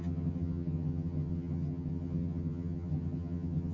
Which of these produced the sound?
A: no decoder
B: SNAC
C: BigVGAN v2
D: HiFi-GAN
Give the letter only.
D